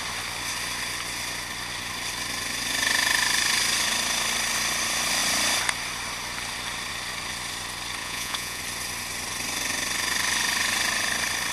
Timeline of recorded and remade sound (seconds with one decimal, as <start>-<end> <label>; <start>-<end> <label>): 0.0-8.0 recorded; 8.0-8.6 remade; 8.6-11.5 recorded

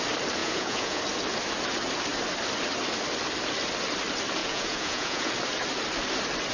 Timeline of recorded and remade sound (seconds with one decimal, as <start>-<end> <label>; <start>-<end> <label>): 0.0-0.4 recorded; 0.4-1.0 remade; 1.0-4.4 recorded; 4.4-5.3 remade; 5.3-6.5 recorded

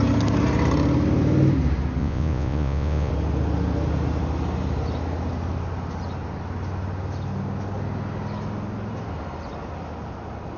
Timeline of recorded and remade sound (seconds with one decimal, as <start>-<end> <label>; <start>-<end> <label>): 0.0-2.0 recorded; 2.0-3.1 remade; 3.1-10.6 recorded

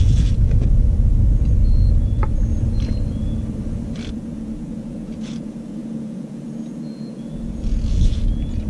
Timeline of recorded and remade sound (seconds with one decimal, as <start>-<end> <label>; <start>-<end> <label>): 0.0-2.5 remade; 2.5-4.1 recorded; 4.1-8.7 remade

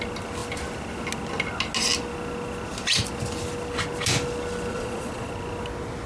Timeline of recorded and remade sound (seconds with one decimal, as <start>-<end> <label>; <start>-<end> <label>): 0.0-4.7 recorded; 4.7-5.3 remade; 5.3-6.1 recorded

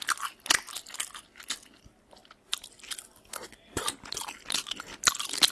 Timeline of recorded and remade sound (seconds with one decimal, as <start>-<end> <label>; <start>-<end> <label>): 0.0-5.5 recorded